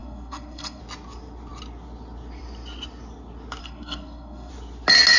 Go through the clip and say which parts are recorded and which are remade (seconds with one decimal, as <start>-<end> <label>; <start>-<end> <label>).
0.0-0.8 remade; 0.8-3.6 recorded; 3.6-4.5 remade; 4.5-5.2 recorded